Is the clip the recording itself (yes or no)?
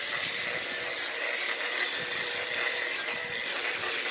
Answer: yes